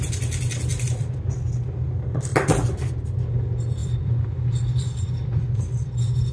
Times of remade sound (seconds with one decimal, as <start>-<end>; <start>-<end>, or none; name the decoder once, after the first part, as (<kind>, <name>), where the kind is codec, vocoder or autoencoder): 0.7-1.3 (vocoder, BigVGAN v2); 2.3-2.9; 3.8-6.3